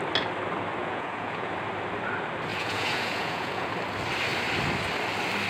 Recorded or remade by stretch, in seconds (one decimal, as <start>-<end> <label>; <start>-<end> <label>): 0.0-0.8 recorded; 0.8-1.5 remade; 1.5-2.5 recorded; 2.5-3.7 remade; 3.7-5.5 recorded